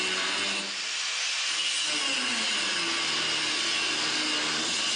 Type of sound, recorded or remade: recorded